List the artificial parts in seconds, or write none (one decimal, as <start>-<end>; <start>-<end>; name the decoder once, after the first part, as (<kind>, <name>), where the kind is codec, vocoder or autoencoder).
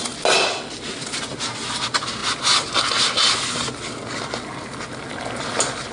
none